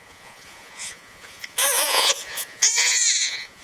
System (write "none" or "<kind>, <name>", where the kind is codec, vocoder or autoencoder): vocoder, Vocos